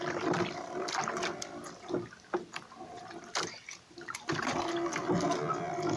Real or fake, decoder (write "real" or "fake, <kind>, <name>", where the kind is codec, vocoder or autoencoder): real